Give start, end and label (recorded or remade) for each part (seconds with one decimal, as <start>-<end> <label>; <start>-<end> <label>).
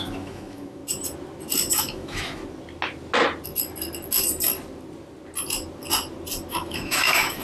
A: 0.0-0.8 remade; 0.8-1.8 recorded; 1.8-2.4 remade; 2.4-6.5 recorded; 6.5-7.4 remade